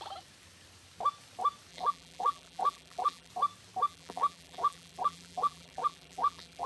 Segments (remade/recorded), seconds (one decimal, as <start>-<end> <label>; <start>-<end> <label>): 0.0-1.7 recorded; 1.7-3.3 remade; 3.3-3.9 recorded; 3.9-6.7 remade